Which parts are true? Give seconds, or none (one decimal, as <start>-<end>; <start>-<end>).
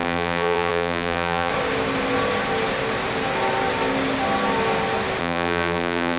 1.5-5.2